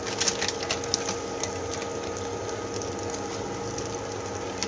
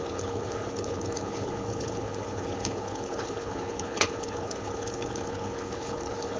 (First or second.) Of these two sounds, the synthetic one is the second